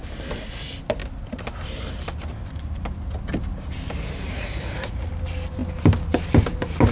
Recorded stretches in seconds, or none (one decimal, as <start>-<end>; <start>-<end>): 0.0-4.3; 5.1-6.9